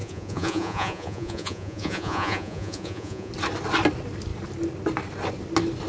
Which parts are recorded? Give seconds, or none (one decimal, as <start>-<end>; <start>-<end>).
3.3-5.9